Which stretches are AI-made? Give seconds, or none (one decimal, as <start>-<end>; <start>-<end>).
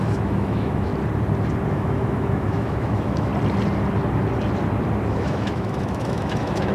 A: 0.0-0.9; 1.7-3.3; 5.1-6.7